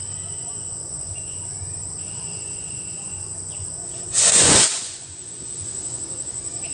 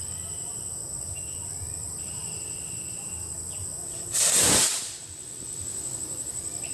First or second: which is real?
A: second